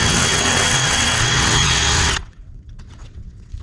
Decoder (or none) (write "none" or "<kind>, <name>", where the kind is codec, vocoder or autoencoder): vocoder, WaveNeXt